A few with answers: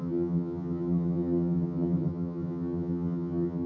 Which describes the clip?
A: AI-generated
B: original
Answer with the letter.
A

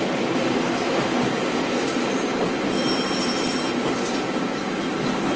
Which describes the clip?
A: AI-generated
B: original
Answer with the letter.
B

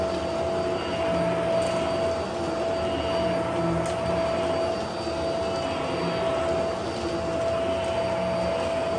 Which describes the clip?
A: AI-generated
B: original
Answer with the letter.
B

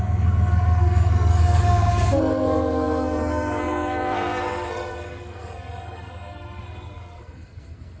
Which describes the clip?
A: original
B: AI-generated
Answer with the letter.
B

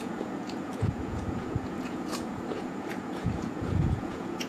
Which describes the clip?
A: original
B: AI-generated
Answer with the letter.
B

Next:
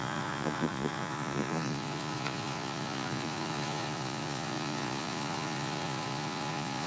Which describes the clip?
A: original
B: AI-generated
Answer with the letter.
B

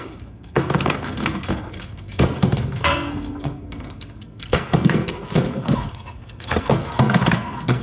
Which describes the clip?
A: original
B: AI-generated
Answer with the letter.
B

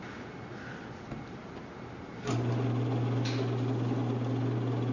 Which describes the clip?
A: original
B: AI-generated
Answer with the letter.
A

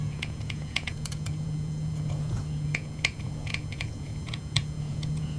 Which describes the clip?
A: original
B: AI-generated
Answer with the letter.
B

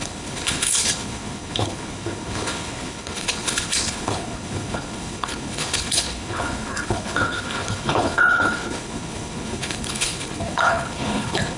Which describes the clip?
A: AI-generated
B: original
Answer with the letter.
A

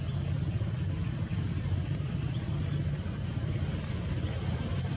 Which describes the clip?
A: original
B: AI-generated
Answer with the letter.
A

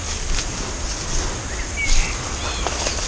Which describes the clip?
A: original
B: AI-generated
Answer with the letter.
A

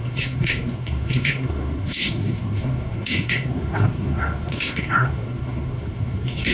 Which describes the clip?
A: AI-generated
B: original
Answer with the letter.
A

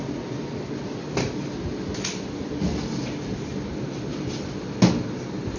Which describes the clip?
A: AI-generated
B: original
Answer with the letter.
B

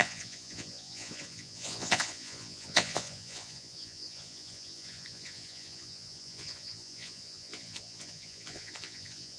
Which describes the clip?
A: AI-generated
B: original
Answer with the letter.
A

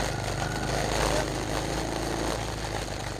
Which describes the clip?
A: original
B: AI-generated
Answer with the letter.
A